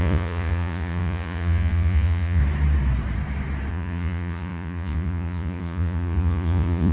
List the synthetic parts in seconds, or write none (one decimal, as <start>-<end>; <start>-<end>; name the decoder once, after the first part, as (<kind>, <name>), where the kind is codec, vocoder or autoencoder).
0.0-2.4 (vocoder, Vocos); 3.7-6.9